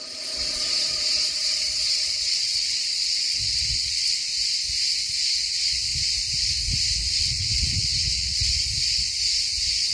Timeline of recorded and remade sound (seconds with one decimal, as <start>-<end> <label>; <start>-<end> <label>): 0.0-4.3 remade; 4.3-5.5 recorded; 5.5-5.9 remade; 5.9-7.2 recorded; 7.2-8.5 remade; 8.5-9.9 recorded

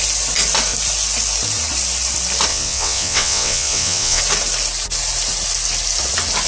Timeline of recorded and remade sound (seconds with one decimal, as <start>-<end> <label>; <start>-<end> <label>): 0.0-2.5 recorded; 2.5-4.2 remade; 4.2-6.5 recorded

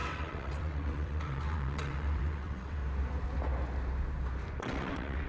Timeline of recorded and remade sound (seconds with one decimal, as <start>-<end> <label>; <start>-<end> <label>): 0.0-2.8 remade; 2.8-4.6 recorded; 4.6-5.3 remade

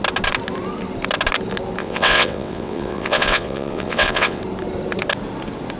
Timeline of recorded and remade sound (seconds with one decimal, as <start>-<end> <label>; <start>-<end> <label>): 0.0-1.8 recorded; 1.8-4.4 remade; 4.4-5.8 recorded

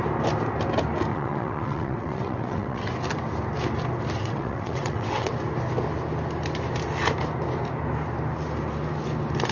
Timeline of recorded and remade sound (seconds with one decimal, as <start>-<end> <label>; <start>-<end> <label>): 0.0-1.1 recorded; 1.1-2.9 remade; 2.9-4.2 recorded; 4.2-5.3 remade; 5.3-9.5 recorded

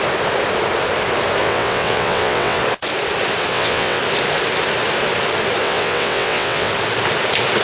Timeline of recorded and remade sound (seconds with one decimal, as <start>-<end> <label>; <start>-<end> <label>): 0.0-1.4 recorded; 1.4-2.6 remade; 2.6-3.5 recorded; 3.5-4.0 remade; 4.0-5.6 recorded; 5.6-6.7 remade; 6.7-7.6 recorded

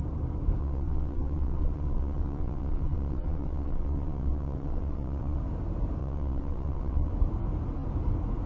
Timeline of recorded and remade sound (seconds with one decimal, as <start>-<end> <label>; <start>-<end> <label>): 0.0-0.6 recorded; 0.6-5.4 remade; 5.4-6.0 recorded; 6.0-7.1 remade; 7.1-8.5 recorded